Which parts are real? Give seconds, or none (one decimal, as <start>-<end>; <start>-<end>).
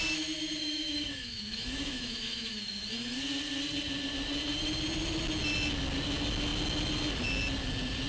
0.0-0.6; 2.9-8.1